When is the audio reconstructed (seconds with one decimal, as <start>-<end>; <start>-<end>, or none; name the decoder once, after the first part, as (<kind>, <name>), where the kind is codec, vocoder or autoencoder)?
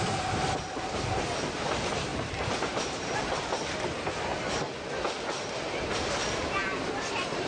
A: 2.1-3.4 (vocoder, BigVGAN v2); 6.6-7.1